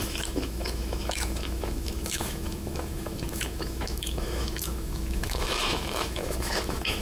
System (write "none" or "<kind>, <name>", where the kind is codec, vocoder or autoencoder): autoencoder, DAC-VAE